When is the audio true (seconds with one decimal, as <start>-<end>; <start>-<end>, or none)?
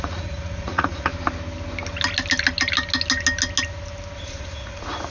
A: 1.1-4.2